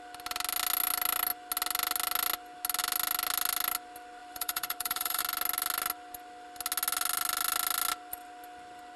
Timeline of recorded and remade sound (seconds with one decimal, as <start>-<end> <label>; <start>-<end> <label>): 0.0-4.2 recorded; 4.2-5.2 remade; 5.2-9.0 recorded